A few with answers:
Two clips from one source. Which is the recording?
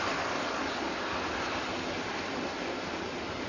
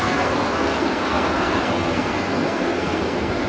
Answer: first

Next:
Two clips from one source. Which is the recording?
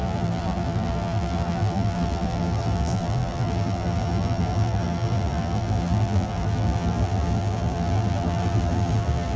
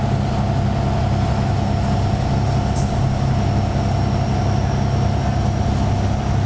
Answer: second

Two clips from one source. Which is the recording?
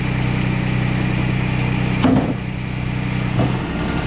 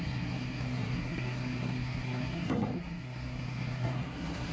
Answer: first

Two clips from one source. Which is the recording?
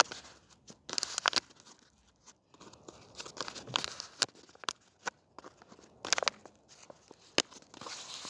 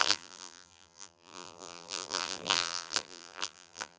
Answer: first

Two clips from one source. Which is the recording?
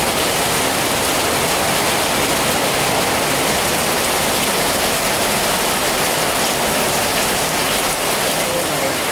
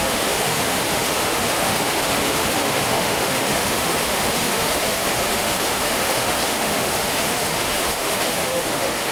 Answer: first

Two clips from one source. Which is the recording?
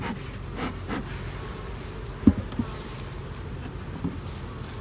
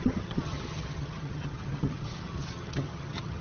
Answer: first